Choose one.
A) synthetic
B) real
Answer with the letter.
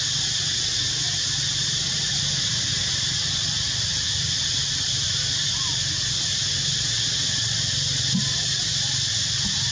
B